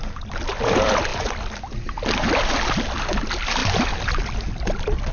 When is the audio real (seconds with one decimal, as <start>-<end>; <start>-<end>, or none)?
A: 1.1-3.2; 3.6-4.2